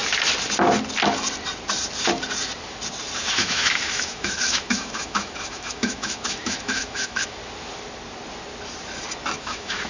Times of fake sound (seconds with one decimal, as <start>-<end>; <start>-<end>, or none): 3.2-7.4; 9.4-9.9